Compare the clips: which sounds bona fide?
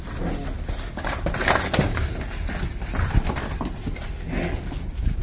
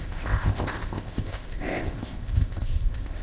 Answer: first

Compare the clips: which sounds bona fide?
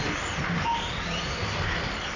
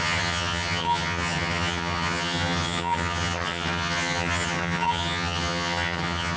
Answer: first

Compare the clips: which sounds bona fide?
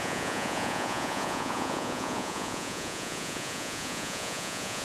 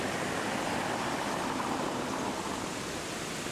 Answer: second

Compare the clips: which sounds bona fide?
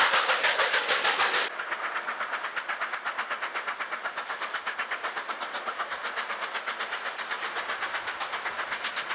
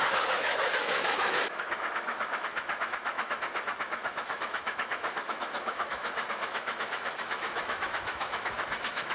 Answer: first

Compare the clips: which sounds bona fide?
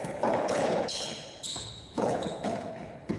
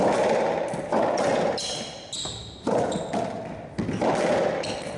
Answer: second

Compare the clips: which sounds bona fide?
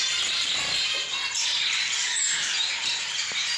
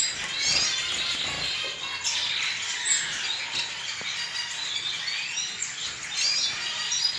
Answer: second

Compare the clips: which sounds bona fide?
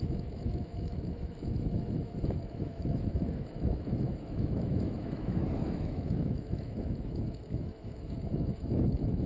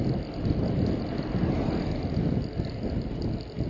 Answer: second